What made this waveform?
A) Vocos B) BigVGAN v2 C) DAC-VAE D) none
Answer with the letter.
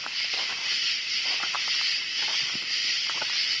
D